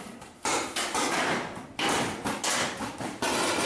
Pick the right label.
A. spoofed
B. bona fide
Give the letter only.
B